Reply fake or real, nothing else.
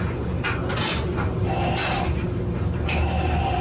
real